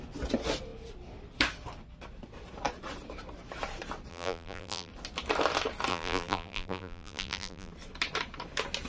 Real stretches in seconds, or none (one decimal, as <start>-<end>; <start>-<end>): 0.0-4.1; 4.9-5.9; 7.7-8.9